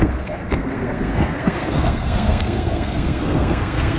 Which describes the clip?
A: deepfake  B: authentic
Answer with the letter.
A